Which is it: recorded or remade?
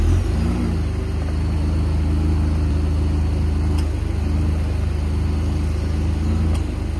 recorded